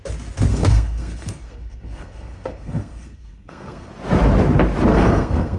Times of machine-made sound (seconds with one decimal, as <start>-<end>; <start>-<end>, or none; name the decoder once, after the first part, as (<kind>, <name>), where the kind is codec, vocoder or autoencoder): 0.5-3.9 (codec, SNAC); 4.9-5.6